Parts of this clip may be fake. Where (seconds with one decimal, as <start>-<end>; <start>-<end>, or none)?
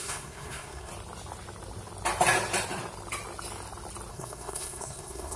0.0-0.9; 4.1-5.4